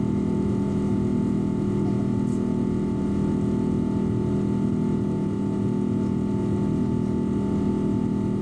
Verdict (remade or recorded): recorded